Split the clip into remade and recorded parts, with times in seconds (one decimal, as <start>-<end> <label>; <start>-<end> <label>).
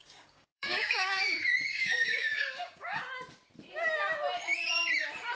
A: 0.0-1.2 remade; 1.2-1.7 recorded; 1.7-3.0 remade; 3.0-5.4 recorded